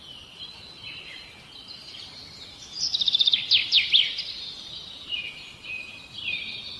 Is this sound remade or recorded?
recorded